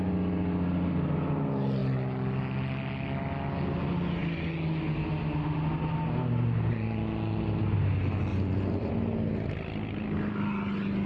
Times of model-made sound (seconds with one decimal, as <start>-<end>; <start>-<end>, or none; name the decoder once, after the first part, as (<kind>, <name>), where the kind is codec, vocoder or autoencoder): 8.3-8.9 (vocoder, Vocos)